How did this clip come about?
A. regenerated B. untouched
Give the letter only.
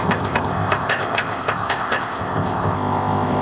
A